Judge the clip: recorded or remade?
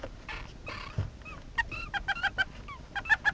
recorded